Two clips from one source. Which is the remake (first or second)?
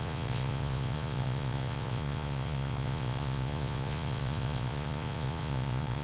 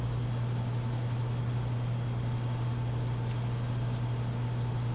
first